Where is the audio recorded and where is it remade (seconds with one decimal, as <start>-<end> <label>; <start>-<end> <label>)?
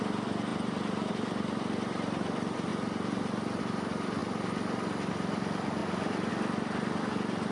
0.0-0.5 remade; 0.5-1.1 recorded; 1.1-2.7 remade; 2.7-3.6 recorded; 3.6-4.2 remade; 4.2-5.1 recorded; 5.1-7.5 remade